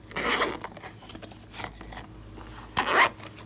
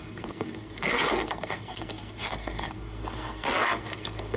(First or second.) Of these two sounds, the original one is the first